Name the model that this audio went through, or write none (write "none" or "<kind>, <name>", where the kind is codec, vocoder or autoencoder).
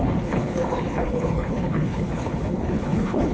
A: codec, HILCodec